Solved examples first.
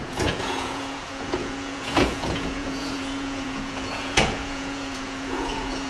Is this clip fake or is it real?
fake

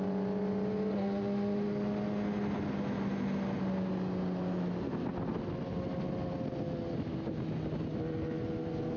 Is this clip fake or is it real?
real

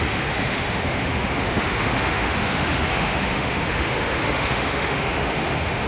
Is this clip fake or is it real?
fake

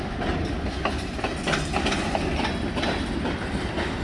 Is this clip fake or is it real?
real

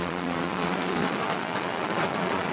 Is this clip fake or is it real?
fake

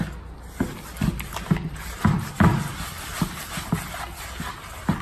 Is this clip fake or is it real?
real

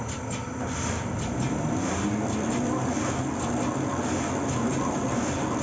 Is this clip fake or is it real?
real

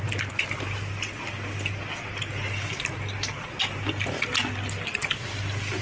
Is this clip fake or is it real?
real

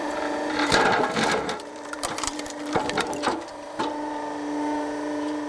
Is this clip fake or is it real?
fake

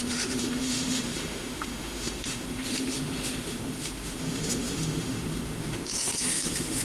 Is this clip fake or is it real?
fake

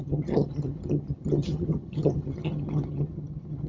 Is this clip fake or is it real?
fake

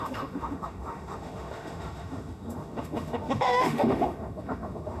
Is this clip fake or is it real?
fake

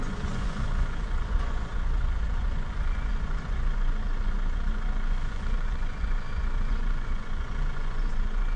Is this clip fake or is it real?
fake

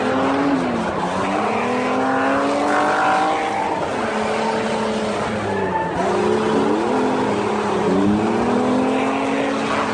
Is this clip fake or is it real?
real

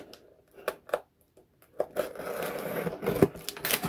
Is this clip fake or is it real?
real